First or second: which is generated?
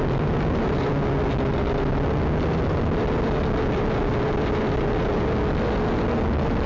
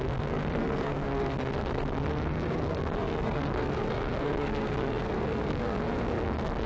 second